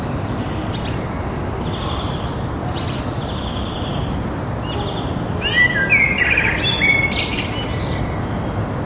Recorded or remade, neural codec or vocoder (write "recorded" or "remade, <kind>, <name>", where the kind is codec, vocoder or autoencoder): recorded